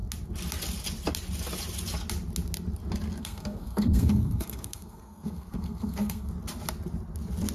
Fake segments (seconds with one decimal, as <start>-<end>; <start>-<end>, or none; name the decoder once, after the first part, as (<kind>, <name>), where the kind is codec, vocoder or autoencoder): 3.2-6.3 (codec, SNAC)